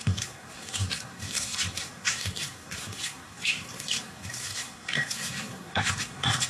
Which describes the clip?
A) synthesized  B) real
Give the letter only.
A